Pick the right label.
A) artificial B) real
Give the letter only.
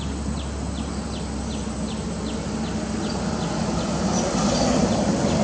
B